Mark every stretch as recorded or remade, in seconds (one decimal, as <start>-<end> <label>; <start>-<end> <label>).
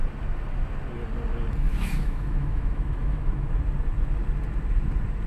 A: 0.0-1.7 recorded; 1.7-3.5 remade; 3.5-5.3 recorded